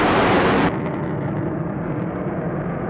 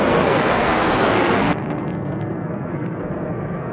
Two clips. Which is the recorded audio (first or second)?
first